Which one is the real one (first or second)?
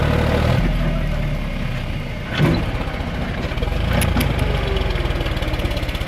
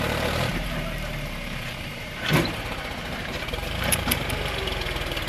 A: first